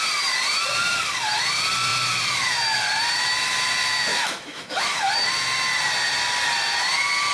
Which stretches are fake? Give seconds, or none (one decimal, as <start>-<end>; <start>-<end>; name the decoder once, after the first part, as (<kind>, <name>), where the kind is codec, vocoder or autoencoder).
4.1-5.0 (autoencoder, DAC-VAE)